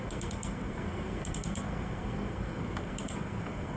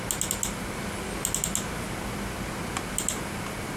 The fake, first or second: first